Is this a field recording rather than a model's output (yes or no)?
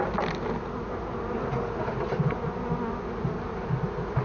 yes